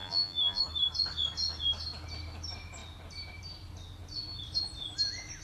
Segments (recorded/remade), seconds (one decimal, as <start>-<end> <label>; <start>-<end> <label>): 0.0-0.6 remade; 0.6-5.4 recorded